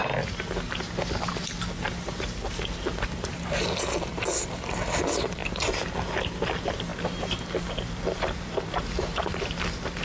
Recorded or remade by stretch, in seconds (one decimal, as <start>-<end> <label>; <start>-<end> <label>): 0.0-4.9 recorded; 4.9-6.9 remade; 6.9-7.5 recorded; 7.5-10.0 remade